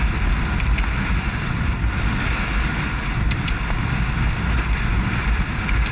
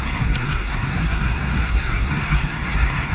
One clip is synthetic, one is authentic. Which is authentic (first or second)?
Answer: first